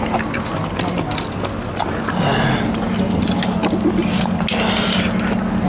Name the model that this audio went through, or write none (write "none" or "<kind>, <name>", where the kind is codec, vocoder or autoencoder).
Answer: none